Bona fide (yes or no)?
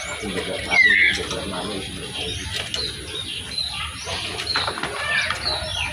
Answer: yes